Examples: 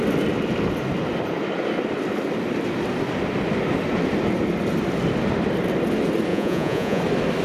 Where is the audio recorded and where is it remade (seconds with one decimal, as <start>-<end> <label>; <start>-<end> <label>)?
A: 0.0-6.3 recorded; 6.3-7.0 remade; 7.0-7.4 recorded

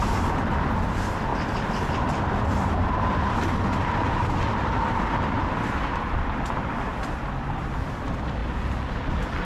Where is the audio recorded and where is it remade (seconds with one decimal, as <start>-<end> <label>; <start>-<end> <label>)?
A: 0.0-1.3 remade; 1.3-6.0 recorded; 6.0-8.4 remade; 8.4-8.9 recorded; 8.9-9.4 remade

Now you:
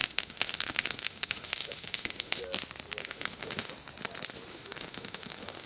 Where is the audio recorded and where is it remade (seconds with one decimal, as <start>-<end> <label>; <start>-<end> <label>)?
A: 0.0-2.4 remade; 2.4-3.0 recorded; 3.0-3.7 remade; 3.7-4.5 recorded; 4.5-5.7 remade